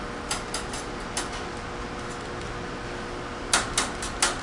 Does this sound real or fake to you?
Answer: real